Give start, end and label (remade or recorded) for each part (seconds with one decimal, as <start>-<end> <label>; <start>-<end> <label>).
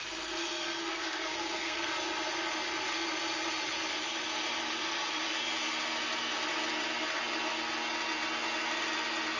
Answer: 0.0-0.8 recorded; 0.8-1.9 remade; 1.9-9.4 recorded